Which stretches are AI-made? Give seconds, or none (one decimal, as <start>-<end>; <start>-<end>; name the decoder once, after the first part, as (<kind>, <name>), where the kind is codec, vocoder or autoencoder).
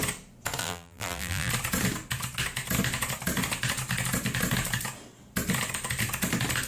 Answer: 0.6-1.5 (vocoder, BigVGAN v2)